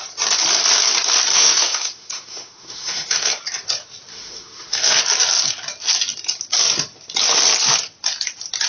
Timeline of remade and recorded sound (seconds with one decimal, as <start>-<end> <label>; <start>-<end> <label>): 0.0-1.3 recorded; 1.3-3.4 remade; 3.4-4.1 recorded; 4.1-5.0 remade; 5.0-8.7 recorded